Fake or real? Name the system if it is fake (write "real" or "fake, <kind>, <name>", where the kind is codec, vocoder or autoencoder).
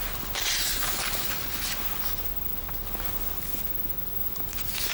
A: fake, vocoder, BigVGAN v2